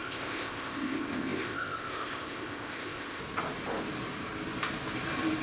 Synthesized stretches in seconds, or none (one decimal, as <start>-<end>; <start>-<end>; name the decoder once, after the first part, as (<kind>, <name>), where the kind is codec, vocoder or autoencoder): 0.0-3.2 (codec, ZipCodec)